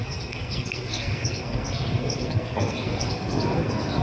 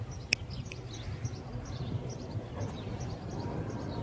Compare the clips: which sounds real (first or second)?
second